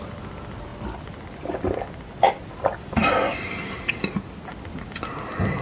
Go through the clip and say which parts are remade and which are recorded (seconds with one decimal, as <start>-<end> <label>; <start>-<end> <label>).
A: 0.0-5.6 recorded